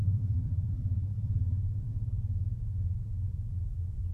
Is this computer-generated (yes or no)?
yes